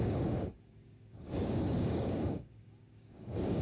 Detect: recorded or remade remade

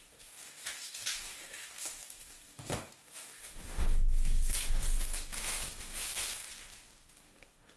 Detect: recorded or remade remade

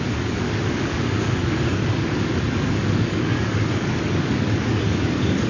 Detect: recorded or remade remade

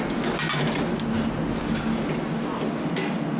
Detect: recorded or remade recorded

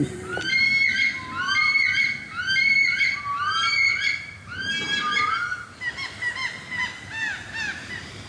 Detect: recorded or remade recorded